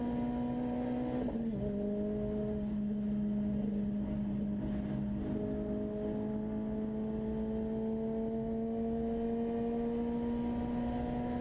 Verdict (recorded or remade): recorded